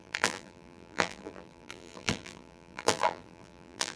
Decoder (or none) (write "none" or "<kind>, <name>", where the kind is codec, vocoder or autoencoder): vocoder, BigVGAN v2